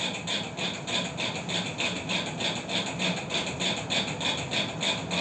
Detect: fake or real real